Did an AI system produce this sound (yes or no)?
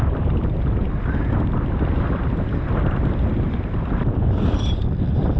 yes